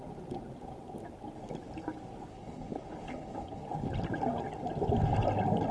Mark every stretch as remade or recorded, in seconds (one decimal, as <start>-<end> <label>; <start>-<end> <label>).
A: 0.0-2.3 recorded; 2.3-3.6 remade; 3.6-5.7 recorded